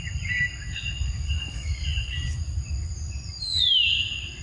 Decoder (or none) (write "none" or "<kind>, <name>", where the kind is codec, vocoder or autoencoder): none